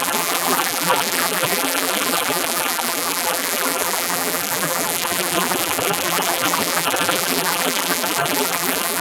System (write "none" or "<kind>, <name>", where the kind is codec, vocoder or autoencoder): vocoder, BigVGAN v2